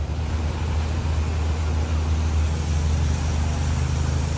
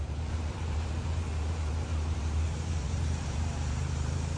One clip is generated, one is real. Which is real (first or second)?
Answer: first